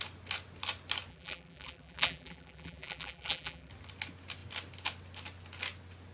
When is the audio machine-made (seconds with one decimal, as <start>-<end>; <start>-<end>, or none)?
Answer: 1.1-3.7